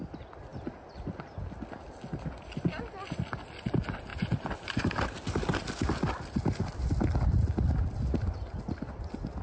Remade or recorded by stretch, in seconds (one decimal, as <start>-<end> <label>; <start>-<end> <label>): 0.0-4.1 recorded; 4.1-5.0 remade; 5.0-9.4 recorded